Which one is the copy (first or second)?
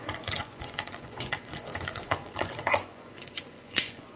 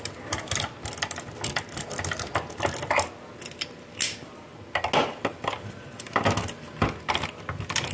first